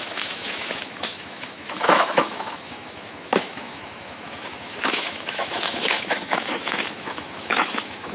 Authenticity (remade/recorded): remade